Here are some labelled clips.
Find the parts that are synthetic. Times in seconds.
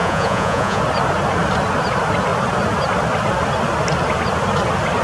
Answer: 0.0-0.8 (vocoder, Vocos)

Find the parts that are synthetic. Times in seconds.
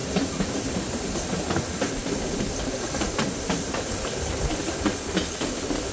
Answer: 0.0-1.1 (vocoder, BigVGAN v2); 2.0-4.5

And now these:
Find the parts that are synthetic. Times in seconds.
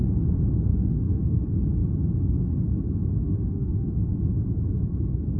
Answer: 0.7-1.4 (autoencoder, DAC-VAE); 3.2-4.2